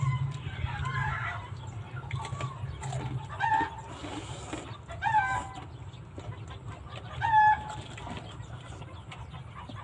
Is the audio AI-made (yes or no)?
no